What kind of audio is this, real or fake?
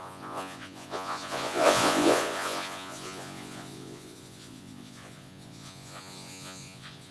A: fake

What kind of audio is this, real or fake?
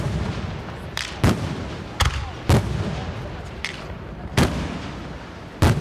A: real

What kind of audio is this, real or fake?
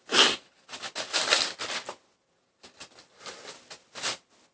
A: real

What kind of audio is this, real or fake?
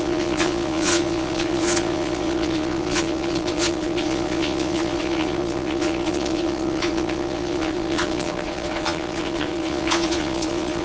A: fake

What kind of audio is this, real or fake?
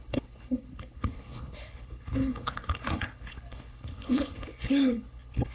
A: fake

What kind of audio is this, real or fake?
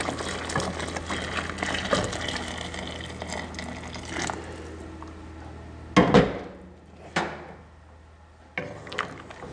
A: real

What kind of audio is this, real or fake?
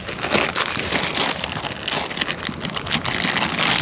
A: real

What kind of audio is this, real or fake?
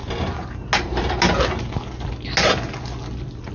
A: real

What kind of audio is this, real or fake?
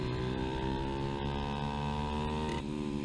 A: real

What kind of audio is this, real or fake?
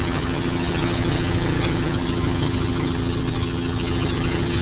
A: fake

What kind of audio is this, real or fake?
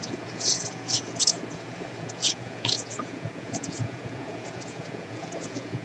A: fake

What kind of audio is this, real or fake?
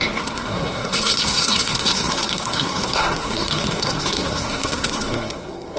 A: fake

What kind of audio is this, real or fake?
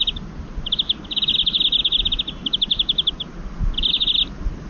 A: real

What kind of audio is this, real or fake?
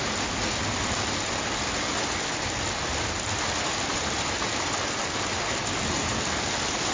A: real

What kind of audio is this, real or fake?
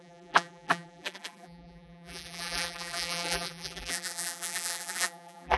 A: fake